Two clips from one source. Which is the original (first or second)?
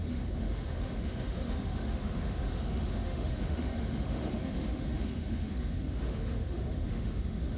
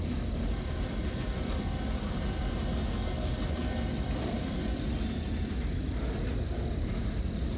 second